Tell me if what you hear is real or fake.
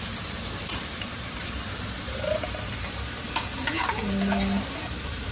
fake